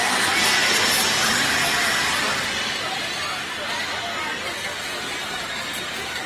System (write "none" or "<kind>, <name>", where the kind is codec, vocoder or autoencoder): none